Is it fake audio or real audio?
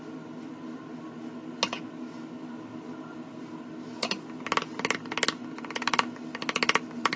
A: real